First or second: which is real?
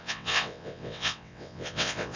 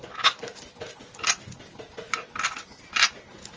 second